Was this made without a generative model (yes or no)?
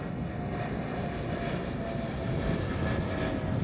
yes